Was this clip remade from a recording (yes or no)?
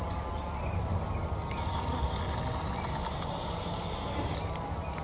no